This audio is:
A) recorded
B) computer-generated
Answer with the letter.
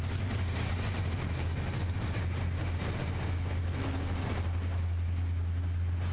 A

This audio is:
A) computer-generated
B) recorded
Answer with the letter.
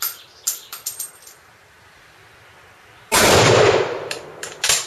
A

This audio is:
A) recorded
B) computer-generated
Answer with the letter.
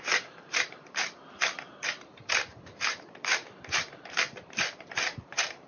B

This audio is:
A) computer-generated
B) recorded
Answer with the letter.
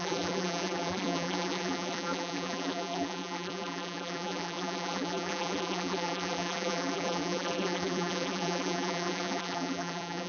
A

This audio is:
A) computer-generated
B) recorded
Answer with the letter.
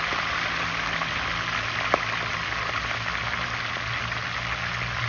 B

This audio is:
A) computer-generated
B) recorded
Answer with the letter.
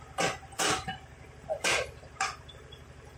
A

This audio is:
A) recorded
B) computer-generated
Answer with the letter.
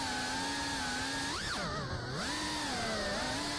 A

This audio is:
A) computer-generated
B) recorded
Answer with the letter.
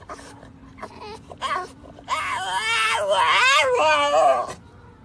B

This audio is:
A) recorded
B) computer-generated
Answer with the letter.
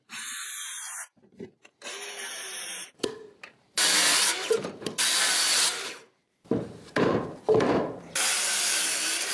B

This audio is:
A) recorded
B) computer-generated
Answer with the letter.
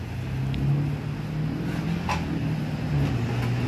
A